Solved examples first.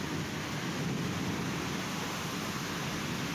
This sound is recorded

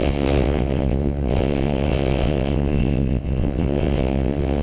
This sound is remade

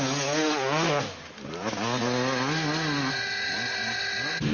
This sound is recorded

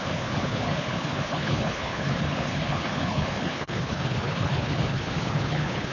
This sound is remade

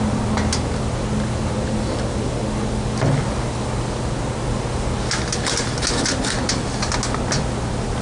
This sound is recorded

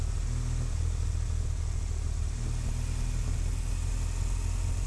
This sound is recorded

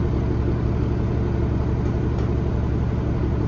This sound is recorded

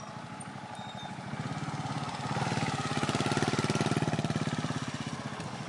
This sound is recorded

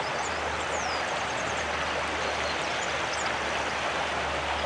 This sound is recorded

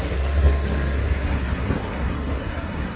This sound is remade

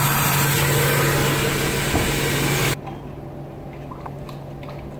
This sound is recorded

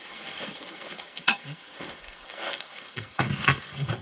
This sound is remade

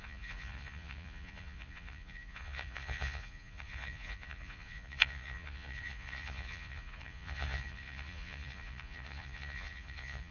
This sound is remade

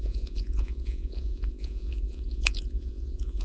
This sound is remade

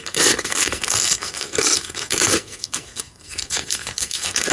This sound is remade